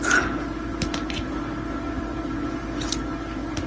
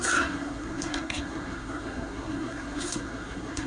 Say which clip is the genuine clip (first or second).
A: first